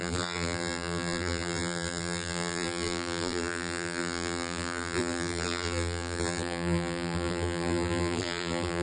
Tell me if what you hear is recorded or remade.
remade